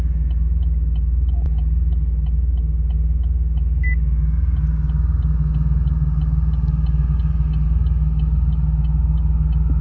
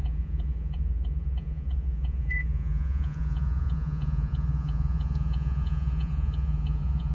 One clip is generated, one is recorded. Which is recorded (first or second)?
first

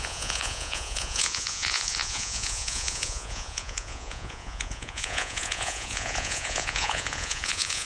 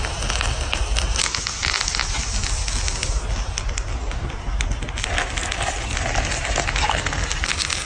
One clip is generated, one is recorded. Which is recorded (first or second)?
second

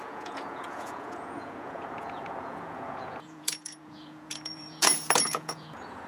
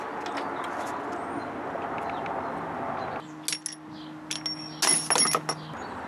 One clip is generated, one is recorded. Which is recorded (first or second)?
second